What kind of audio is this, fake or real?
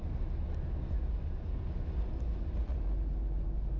real